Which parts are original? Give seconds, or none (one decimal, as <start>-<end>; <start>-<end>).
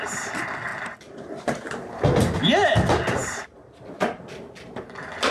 0.0-5.3